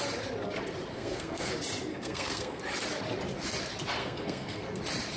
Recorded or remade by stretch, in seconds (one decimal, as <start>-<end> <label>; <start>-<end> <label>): 0.0-0.9 recorded; 0.9-1.5 remade; 1.5-1.9 recorded; 1.9-2.6 remade; 2.6-4.0 recorded; 4.0-4.8 remade; 4.8-5.2 recorded